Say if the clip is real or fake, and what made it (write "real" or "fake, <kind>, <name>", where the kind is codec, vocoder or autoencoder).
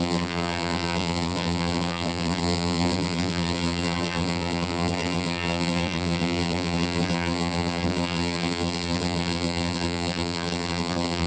fake, vocoder, BigVGAN v2